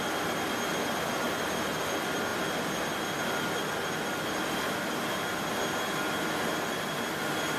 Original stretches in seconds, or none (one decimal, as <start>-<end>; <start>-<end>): 0.0-7.6